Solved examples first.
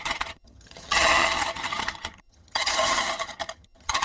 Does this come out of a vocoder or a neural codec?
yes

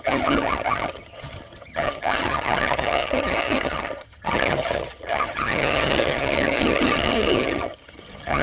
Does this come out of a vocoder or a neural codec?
yes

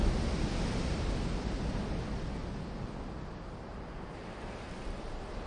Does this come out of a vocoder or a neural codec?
no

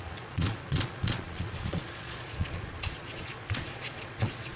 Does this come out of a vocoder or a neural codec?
yes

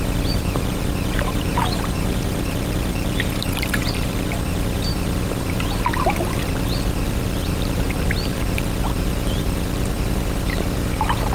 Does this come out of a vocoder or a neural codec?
yes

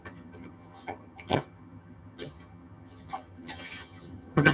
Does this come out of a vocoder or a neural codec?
yes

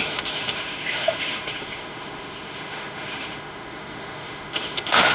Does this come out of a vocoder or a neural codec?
yes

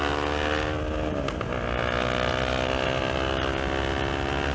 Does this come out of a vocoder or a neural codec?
no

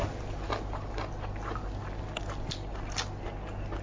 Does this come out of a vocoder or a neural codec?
no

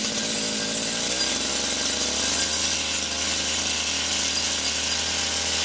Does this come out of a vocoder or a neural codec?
no